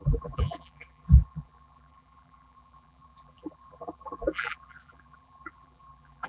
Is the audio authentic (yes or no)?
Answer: no